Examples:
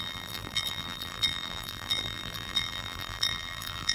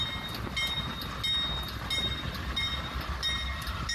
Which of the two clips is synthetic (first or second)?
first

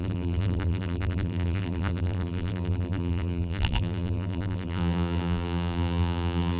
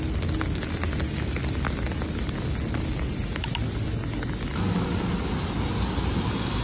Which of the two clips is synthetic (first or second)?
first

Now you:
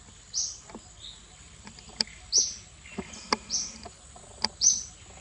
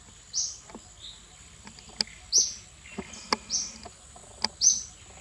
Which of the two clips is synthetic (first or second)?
first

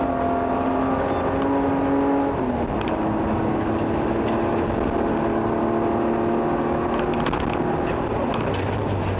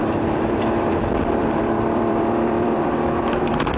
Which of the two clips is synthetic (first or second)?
second